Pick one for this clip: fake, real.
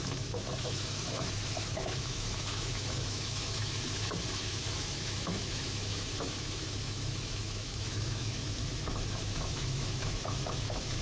fake